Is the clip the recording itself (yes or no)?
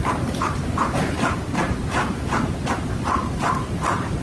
no